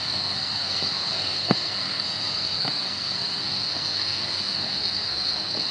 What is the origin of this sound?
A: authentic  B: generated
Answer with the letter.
B